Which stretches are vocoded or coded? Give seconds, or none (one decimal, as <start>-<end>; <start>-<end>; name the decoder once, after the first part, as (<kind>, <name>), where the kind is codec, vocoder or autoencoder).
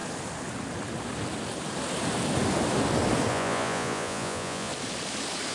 3.3-4.7 (vocoder, Vocos)